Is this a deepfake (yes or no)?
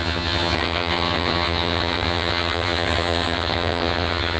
yes